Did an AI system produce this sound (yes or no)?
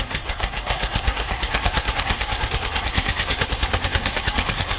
yes